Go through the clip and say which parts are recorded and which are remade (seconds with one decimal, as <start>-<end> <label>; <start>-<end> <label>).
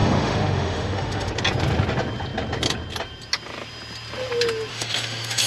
0.0-1.3 remade; 1.3-4.7 recorded; 4.7-5.5 remade